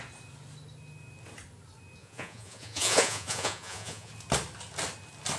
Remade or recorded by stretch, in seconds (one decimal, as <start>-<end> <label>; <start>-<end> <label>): 0.0-2.0 recorded; 2.0-4.1 remade; 4.1-5.4 recorded